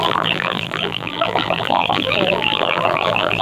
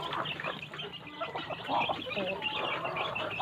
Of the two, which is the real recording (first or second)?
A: second